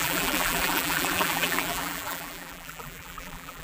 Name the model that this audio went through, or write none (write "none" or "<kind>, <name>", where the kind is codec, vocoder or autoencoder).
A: vocoder, BigVGAN v2